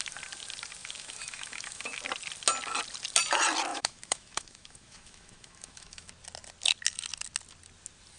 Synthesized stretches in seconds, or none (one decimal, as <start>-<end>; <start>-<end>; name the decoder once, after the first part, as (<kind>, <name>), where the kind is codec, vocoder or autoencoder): 0.8-2.0 (autoencoder, DAC-VAE); 3.7-6.1